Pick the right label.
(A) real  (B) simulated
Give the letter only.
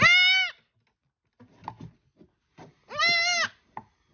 A